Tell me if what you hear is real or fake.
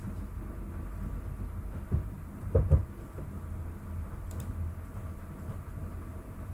real